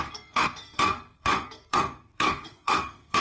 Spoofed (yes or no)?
yes